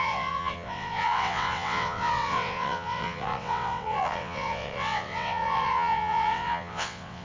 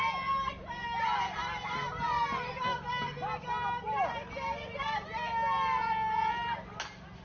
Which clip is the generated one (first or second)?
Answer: first